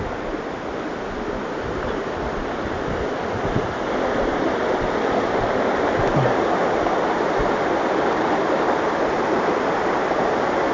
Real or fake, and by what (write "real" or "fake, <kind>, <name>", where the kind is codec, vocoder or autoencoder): real